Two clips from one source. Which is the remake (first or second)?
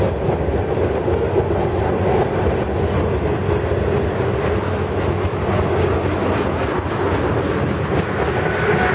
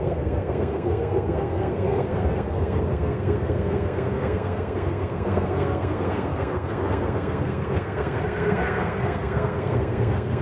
second